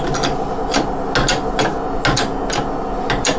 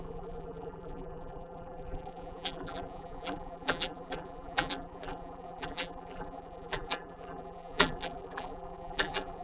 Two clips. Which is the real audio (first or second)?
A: first